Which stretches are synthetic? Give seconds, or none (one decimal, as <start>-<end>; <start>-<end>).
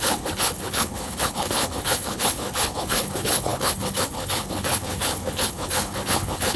0.0-6.6